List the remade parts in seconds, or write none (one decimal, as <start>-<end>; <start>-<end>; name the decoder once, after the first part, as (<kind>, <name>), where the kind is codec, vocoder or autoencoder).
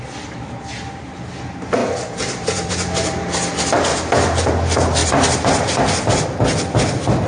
1.8-2.7 (vocoder, BigVGAN v2); 3.9-4.5; 5.0-5.8